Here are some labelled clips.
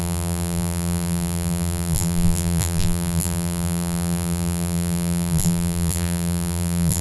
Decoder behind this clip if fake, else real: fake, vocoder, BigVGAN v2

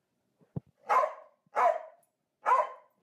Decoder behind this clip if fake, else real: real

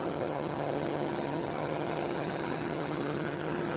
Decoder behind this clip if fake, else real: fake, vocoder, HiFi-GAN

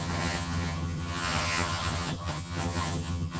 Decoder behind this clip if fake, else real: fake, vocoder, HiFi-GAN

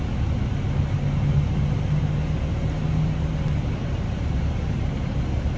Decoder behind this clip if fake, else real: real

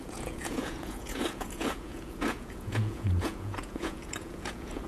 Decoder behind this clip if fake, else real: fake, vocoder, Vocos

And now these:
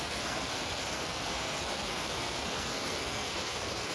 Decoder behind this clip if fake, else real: fake, codec, SNAC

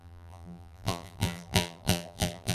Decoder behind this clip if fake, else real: fake, vocoder, BigVGAN v2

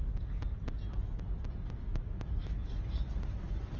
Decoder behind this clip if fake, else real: real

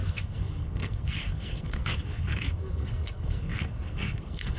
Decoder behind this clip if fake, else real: fake, codec, SNAC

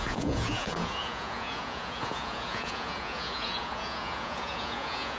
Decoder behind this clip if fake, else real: fake, vocoder, Vocos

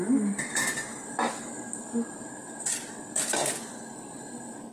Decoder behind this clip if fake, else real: real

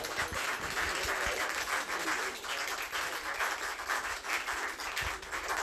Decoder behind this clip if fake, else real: real